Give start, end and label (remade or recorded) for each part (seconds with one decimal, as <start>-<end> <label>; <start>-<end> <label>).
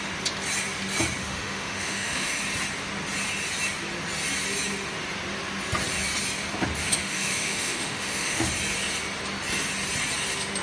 0.0-1.2 recorded; 1.2-2.4 remade; 2.4-6.8 recorded; 6.8-8.5 remade; 8.5-10.6 recorded